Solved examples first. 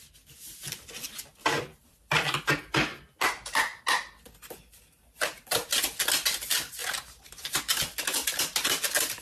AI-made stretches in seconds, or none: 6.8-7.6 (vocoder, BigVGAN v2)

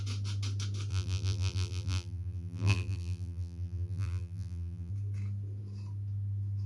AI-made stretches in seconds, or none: 0.9-4.9 (vocoder, BigVGAN v2)

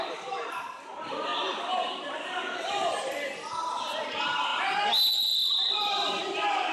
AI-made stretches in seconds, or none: 0.0-1.3 (vocoder, BigVGAN v2); 4.1-4.5; 5.1-6.7